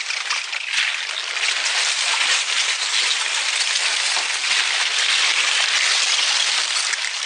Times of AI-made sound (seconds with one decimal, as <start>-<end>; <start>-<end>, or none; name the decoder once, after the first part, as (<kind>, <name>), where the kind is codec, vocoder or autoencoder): none